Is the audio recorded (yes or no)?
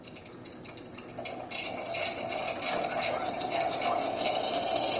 yes